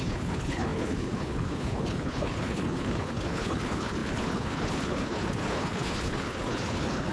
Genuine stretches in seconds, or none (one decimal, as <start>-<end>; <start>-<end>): none